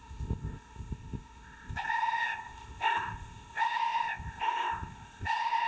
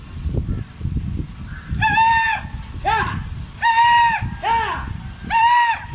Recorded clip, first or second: second